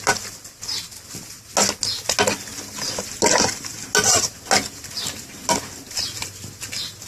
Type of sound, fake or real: real